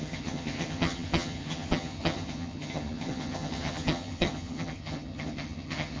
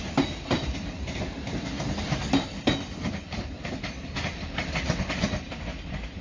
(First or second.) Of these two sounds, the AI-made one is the first